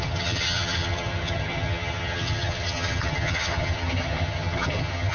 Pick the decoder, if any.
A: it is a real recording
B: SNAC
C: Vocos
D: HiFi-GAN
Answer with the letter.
D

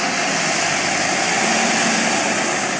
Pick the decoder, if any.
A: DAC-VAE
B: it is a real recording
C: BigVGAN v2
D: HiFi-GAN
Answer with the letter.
B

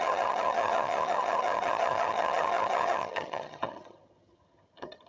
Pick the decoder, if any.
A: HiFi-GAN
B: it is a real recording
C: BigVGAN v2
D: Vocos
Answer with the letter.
A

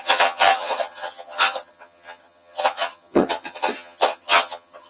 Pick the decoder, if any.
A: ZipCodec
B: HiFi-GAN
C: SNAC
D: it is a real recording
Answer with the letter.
B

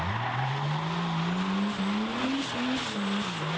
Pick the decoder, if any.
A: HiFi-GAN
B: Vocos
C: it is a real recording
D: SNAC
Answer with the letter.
C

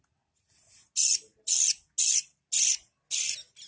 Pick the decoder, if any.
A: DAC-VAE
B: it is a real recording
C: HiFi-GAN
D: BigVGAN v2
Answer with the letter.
B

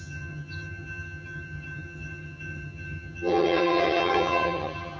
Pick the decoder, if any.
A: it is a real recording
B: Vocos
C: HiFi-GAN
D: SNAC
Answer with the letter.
C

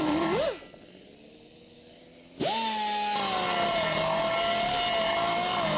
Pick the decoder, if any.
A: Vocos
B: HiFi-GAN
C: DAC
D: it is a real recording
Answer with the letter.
D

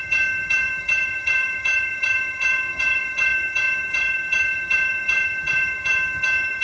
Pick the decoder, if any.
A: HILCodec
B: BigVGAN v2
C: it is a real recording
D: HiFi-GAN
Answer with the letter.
D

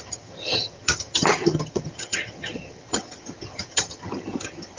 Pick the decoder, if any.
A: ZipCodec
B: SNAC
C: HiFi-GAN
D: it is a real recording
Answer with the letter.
C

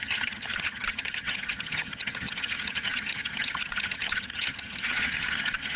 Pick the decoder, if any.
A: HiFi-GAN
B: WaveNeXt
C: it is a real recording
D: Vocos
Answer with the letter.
A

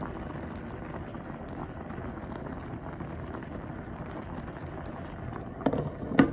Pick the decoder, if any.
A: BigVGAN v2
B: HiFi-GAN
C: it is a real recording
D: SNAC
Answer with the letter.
C